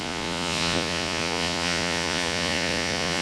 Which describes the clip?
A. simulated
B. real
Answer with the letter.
A